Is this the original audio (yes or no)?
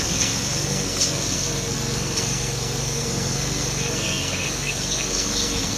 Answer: no